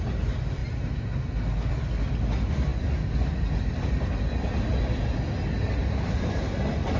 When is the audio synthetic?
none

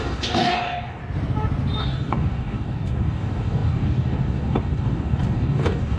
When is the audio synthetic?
0.0-1.0 (codec, DAC); 1.8-6.0

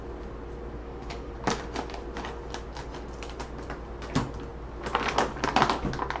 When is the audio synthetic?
0.8-1.3 (codec, DAC)

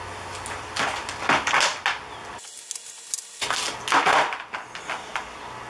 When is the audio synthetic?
none

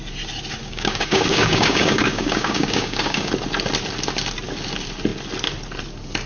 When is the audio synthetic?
0.6-3.3 (codec, DAC)

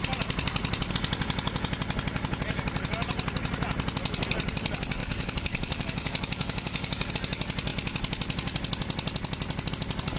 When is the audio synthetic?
5.0-7.1 (codec, DAC)